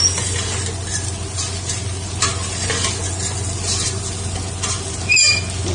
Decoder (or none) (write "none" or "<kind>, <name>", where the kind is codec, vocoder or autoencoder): none